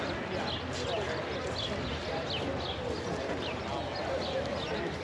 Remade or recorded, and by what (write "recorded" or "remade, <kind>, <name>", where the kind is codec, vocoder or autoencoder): recorded